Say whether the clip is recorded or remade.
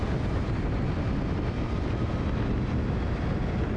recorded